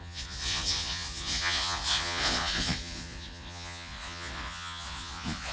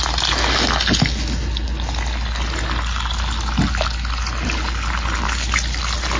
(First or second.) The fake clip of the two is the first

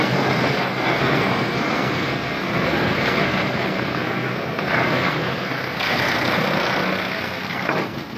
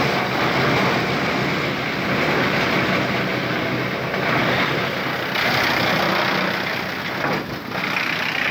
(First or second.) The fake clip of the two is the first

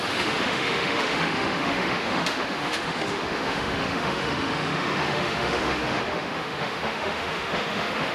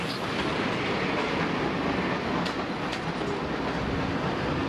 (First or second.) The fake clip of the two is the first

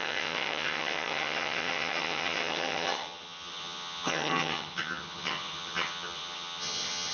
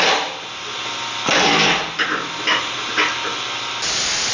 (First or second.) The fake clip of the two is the first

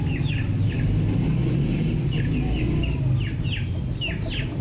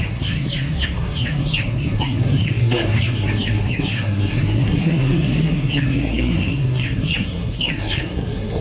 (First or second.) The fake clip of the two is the second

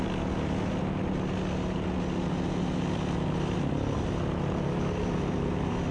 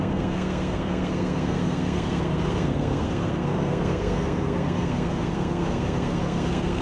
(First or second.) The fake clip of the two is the second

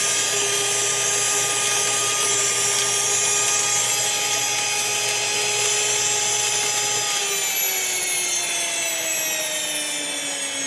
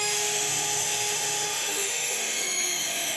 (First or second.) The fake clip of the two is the second